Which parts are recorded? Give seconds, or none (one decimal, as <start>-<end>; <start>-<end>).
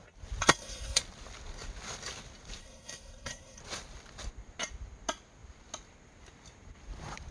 0.0-0.4; 1.0-2.6; 3.6-7.3